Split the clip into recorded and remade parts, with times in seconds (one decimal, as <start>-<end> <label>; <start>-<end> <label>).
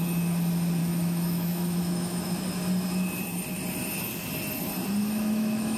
0.0-0.8 recorded; 0.8-2.3 remade; 2.3-5.0 recorded; 5.0-5.8 remade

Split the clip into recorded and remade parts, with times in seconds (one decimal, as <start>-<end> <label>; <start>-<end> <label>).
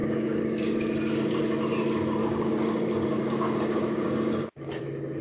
0.0-1.4 remade; 1.4-2.2 recorded; 2.2-4.8 remade; 4.8-5.2 recorded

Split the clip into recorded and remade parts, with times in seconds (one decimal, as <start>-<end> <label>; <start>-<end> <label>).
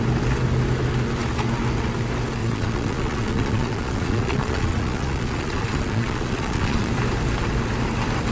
0.0-2.4 recorded; 2.4-6.9 remade; 6.9-8.3 recorded